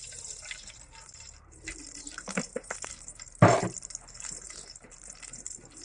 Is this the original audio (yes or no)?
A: no